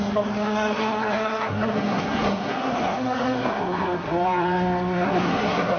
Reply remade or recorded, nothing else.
remade